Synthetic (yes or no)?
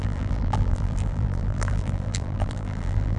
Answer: yes